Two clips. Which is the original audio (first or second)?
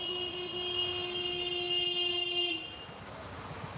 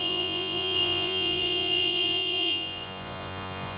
first